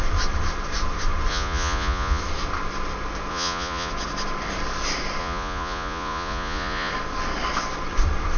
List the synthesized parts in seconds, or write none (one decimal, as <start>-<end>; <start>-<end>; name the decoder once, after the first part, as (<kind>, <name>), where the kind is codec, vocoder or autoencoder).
1.3-2.2 (vocoder, Vocos); 3.3-3.9; 5.2-6.9